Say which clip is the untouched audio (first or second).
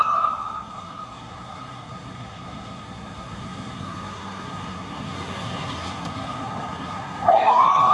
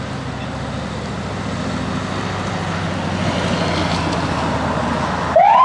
second